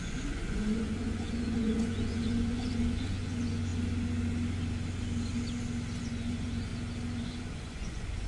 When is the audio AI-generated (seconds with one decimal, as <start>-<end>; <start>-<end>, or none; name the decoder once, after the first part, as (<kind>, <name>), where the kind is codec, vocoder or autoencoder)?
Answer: 0.0-3.7 (vocoder, Vocos); 6.0-6.7; 7.2-8.3